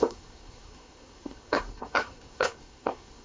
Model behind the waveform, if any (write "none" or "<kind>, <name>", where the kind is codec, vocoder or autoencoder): codec, SNAC